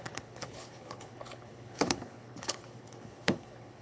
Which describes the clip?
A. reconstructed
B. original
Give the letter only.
A